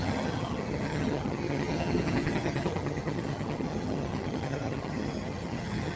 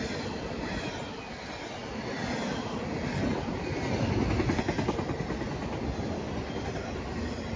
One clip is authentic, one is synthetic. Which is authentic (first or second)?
second